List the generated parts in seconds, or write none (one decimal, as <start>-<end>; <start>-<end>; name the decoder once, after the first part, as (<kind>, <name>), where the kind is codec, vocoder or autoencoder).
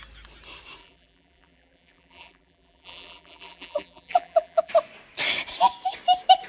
0.8-4.7 (vocoder, BigVGAN v2)